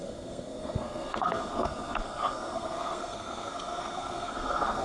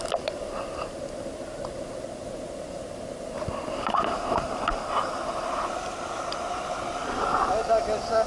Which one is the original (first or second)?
second